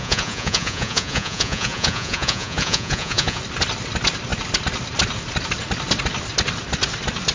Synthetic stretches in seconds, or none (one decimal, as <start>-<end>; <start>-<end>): 0.0-3.4